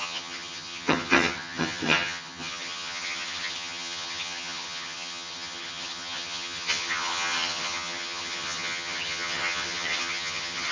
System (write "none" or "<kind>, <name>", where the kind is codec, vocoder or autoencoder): vocoder, HiFi-GAN